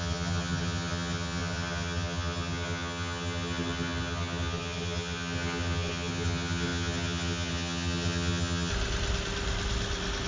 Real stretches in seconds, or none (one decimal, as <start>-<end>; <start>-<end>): 8.7-10.3